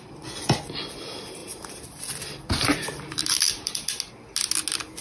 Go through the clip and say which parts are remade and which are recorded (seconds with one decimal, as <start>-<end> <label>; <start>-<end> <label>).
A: 0.0-1.4 recorded; 1.4-3.7 remade; 3.7-5.0 recorded